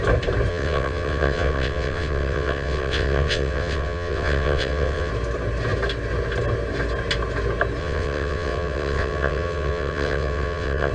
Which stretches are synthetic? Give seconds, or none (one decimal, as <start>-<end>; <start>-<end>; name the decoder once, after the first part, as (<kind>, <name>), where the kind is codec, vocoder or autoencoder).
0.5-5.1 (vocoder, WaveNeXt); 7.8-10.9